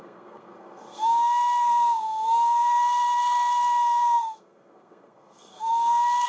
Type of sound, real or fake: fake